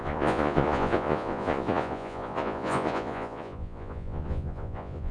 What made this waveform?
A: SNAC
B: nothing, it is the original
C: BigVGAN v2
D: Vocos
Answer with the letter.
D